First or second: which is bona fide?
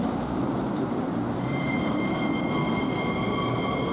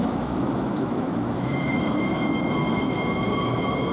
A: first